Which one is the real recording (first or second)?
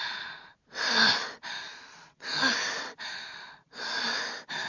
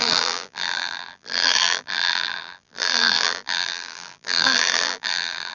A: first